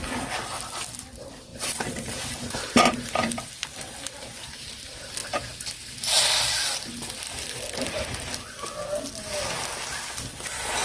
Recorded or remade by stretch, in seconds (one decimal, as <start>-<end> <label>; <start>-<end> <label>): 0.0-1.5 recorded; 1.5-3.5 remade; 3.5-10.8 recorded